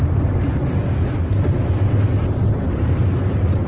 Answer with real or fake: real